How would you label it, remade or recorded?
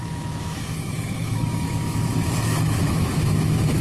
remade